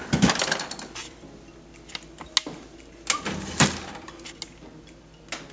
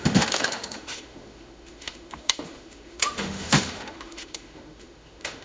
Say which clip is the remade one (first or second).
second